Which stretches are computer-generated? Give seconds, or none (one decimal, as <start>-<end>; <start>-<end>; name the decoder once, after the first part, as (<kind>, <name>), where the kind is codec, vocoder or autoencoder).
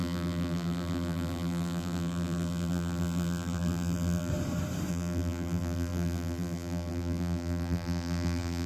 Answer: 0.0-4.3 (vocoder, BigVGAN v2); 4.9-8.7